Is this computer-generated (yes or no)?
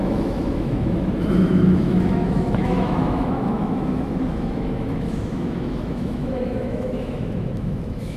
yes